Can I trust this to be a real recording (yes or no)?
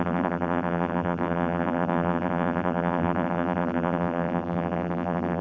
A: no